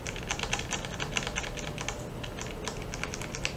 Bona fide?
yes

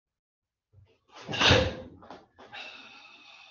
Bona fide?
yes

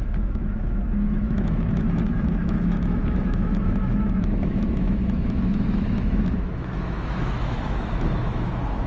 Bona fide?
no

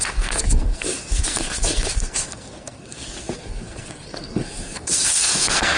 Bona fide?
no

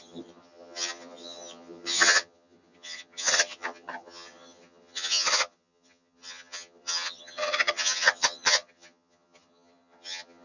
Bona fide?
no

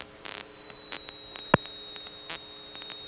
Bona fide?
yes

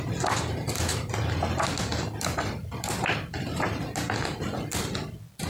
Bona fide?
yes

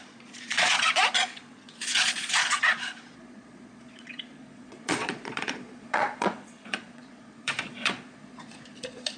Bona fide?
no